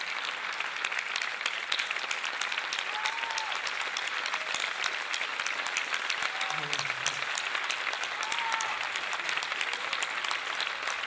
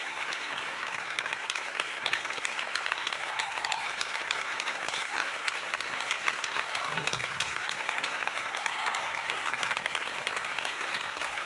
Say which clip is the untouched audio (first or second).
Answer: first